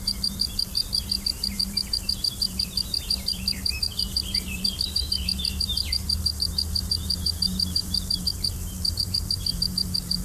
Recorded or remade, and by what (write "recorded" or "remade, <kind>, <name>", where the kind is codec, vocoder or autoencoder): remade, vocoder, BigVGAN v2